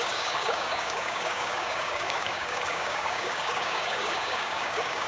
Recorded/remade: remade